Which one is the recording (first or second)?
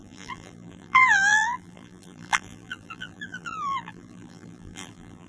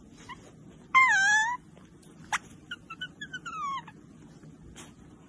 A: second